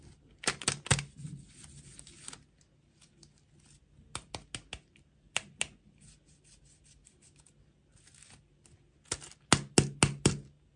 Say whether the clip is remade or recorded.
recorded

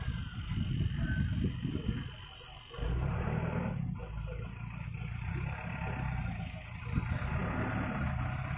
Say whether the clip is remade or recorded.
recorded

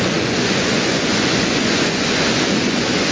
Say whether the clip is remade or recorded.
remade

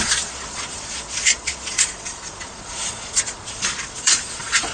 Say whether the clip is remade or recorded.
remade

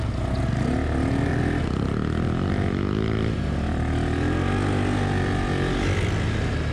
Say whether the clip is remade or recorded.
recorded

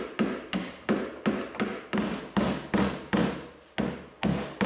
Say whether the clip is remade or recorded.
recorded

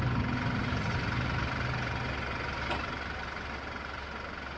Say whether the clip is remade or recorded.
recorded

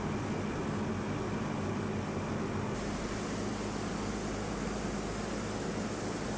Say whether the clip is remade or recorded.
recorded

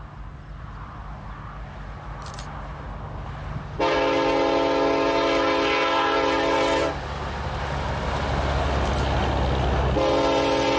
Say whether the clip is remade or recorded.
recorded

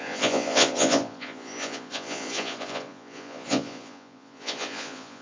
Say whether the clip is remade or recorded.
remade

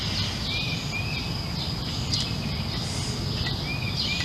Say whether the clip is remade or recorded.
recorded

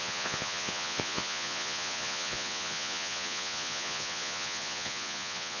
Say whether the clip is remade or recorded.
remade